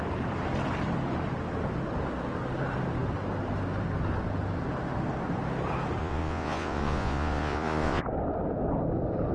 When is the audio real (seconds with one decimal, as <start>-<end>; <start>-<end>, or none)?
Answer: 0.0-6.0; 8.0-9.3